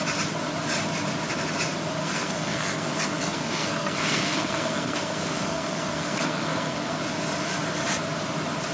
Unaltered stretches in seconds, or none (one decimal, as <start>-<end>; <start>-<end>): 0.0-2.0; 7.0-8.7